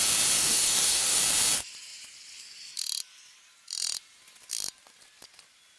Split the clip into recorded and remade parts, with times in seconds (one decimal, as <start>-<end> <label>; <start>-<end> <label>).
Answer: 0.0-0.4 recorded; 0.4-1.2 remade; 1.2-5.8 recorded